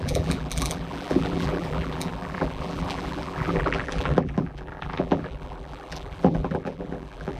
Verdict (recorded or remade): remade